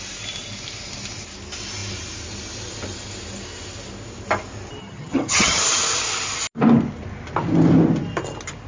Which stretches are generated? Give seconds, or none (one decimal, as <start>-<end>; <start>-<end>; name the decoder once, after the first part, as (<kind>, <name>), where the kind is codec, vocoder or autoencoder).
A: 4.8-5.6 (vocoder, HiFi-GAN)